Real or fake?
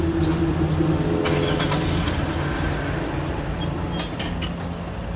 real